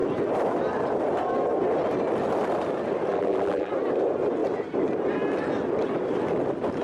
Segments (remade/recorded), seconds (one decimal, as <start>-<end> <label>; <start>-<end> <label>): 0.0-3.1 recorded; 3.1-3.7 remade; 3.7-6.8 recorded